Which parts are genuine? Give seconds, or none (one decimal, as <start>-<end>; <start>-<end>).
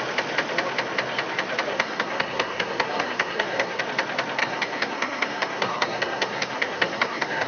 0.0-1.7; 3.8-4.4